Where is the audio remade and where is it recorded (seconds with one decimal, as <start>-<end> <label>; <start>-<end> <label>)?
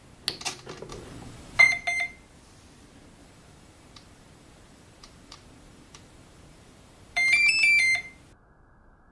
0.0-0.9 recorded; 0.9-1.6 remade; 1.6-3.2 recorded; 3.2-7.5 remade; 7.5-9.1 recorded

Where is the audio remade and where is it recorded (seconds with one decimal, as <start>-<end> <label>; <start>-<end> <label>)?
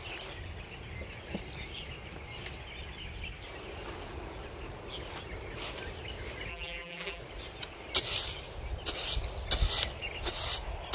0.0-6.5 recorded; 6.5-7.2 remade; 7.2-10.9 recorded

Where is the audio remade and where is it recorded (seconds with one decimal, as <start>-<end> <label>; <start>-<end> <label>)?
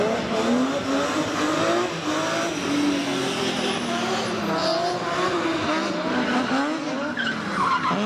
0.0-8.1 recorded